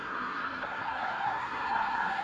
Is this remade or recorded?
remade